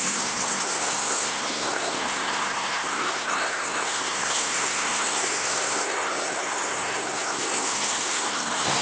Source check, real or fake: fake